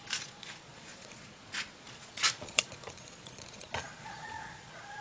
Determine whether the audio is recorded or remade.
remade